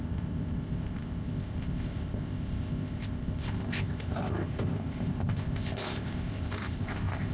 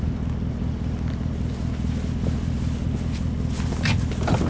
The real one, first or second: second